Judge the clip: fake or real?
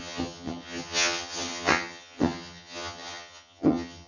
fake